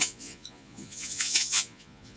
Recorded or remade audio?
remade